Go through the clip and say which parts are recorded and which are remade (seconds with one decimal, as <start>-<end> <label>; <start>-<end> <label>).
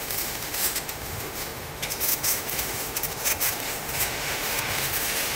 0.0-5.4 remade